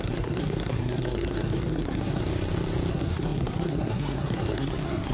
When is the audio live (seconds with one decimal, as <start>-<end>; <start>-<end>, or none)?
2.2-2.9